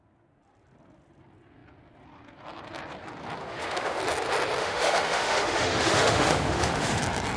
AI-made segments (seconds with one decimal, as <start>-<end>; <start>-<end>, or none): 3.4-4.0; 4.6-7.0